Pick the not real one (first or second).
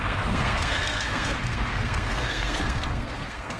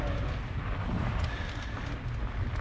first